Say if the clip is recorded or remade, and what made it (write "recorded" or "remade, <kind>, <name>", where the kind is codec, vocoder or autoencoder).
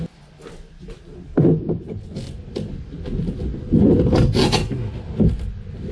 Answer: recorded